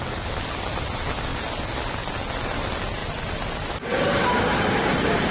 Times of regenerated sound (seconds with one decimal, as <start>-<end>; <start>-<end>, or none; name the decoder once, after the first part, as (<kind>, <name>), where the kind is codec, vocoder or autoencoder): none